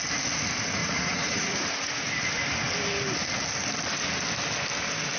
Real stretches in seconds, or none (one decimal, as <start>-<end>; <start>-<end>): 0.0-0.8; 2.1-5.2

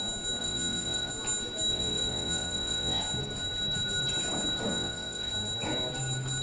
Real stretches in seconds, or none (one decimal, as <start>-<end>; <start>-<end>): 0.0-0.4; 1.1-1.7; 3.0-4.7; 5.3-6.4

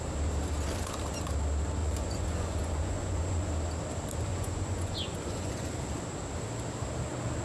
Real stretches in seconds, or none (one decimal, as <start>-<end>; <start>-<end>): 0.0-1.8; 3.5-4.3; 5.7-7.4